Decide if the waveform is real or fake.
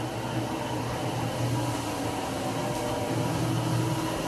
real